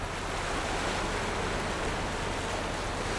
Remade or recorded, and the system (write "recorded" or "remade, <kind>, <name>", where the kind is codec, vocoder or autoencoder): recorded